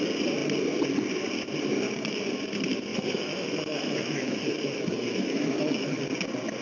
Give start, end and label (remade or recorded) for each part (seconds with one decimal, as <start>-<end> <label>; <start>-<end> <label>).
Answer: 0.0-2.9 recorded; 2.9-6.0 remade; 6.0-6.6 recorded